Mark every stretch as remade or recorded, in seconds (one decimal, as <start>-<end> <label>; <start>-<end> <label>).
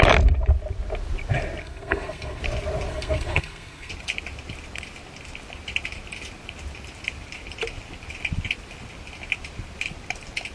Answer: 0.0-1.6 recorded; 1.6-2.4 remade; 2.4-2.9 recorded; 2.9-3.9 remade; 3.9-10.5 recorded